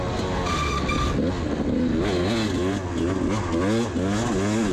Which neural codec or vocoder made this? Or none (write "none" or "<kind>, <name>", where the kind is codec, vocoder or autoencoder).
none